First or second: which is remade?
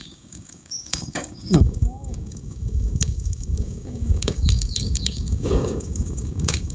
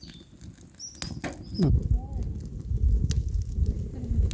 first